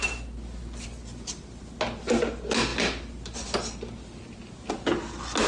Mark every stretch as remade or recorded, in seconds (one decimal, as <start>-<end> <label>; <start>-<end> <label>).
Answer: 0.0-5.5 recorded